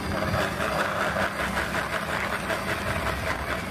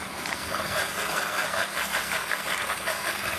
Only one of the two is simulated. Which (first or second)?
second